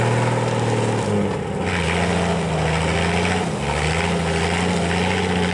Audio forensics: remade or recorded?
recorded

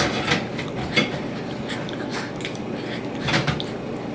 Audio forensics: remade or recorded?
recorded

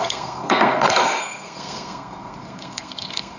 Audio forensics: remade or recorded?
remade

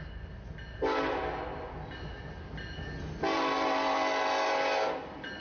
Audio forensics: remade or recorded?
recorded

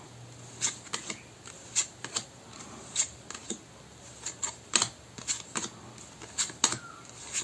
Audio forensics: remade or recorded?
recorded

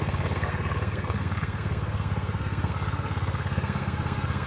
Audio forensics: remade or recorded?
remade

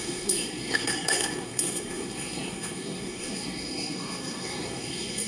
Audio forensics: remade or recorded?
remade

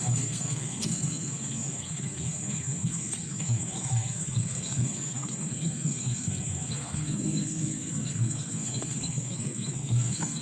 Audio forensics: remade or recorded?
remade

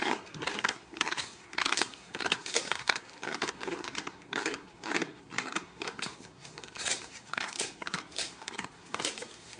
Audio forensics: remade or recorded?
remade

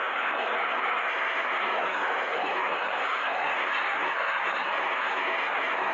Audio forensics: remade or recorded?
remade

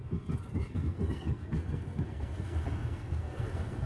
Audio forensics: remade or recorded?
remade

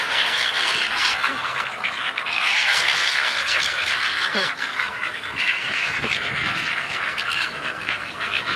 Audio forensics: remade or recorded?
remade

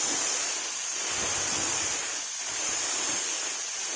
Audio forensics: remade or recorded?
recorded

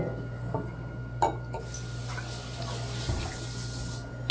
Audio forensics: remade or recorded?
recorded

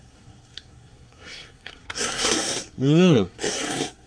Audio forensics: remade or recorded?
remade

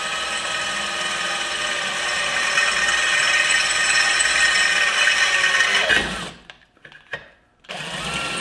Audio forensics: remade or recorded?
recorded